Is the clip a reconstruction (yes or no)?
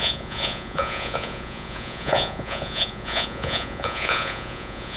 yes